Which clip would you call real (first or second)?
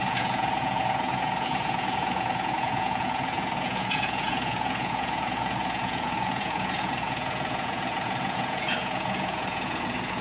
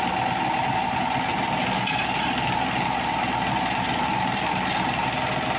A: second